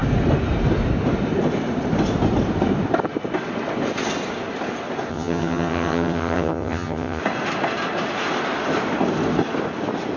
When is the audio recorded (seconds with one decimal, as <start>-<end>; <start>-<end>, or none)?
0.0-5.1; 7.2-10.2